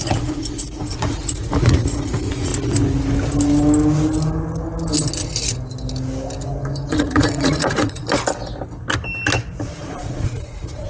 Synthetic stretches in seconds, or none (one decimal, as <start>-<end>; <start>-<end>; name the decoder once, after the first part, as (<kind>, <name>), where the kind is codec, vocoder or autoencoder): 0.0-2.5 (vocoder, Vocos); 6.9-8.0; 9.6-10.9